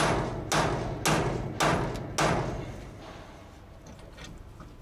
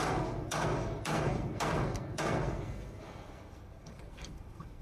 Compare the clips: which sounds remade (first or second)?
second